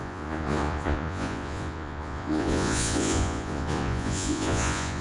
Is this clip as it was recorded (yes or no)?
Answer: no